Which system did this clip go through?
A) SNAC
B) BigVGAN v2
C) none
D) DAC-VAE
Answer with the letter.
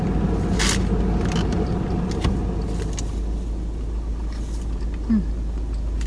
C